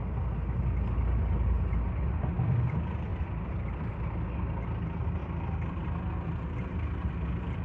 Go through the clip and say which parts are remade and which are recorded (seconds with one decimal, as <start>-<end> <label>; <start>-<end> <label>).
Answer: 0.0-3.1 recorded; 3.1-3.9 remade; 3.9-5.2 recorded; 5.2-7.1 remade; 7.1-7.6 recorded